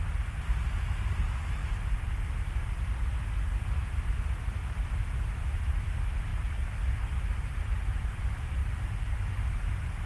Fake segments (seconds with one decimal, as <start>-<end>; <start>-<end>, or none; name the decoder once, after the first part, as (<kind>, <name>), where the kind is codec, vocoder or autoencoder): none